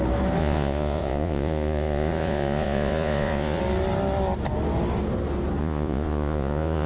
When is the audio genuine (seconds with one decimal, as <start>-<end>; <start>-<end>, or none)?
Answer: 0.0-0.4; 3.6-5.6